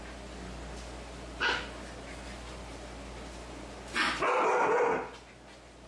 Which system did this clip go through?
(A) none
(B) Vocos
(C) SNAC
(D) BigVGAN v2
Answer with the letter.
A